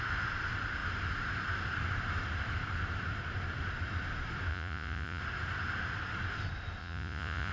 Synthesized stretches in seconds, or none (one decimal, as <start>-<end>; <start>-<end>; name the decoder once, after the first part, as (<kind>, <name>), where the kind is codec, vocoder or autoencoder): 4.5-5.2 (vocoder, Vocos); 6.8-7.5